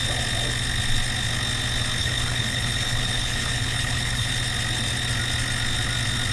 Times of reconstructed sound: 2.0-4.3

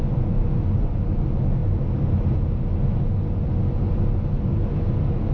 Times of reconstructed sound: none

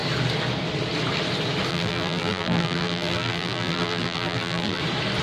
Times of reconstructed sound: 1.7-4.8

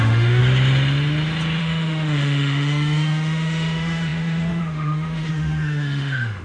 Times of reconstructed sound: 0.0-0.4; 1.6-6.4

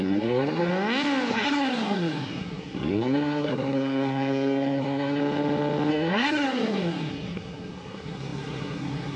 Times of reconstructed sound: 0.0-0.7; 1.3-5.2; 5.9-9.2

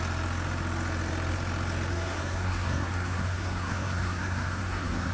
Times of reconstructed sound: 1.9-5.1

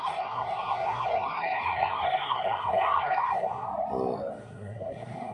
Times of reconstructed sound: 0.0-3.7; 4.4-5.3